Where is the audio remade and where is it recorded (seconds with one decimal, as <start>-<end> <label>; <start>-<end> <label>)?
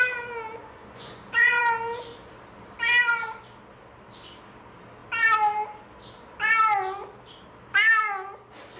0.0-0.6 recorded; 0.6-1.6 remade; 1.6-8.8 recorded